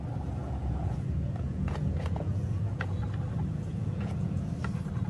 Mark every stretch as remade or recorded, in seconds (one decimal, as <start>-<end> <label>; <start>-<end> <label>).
0.0-0.4 recorded; 0.4-3.0 remade; 3.0-3.7 recorded; 3.7-4.5 remade; 4.5-5.1 recorded